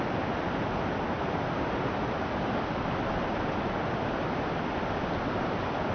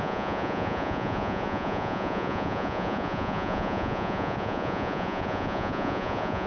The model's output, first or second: second